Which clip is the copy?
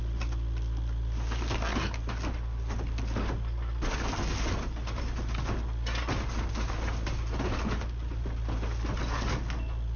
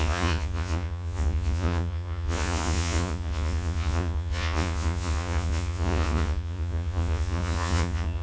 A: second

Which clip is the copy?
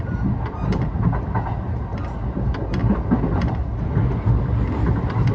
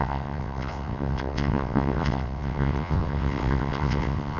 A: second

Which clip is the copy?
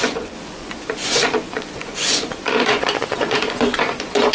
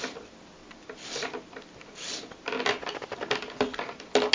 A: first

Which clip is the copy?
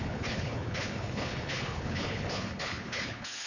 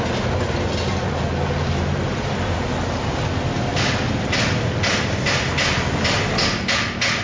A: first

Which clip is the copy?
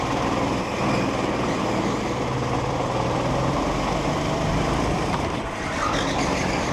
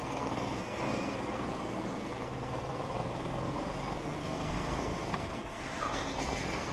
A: second